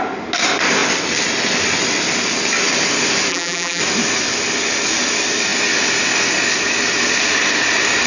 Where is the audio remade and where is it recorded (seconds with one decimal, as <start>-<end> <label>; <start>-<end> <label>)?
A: 0.0-3.3 recorded; 3.3-3.8 remade; 3.8-8.1 recorded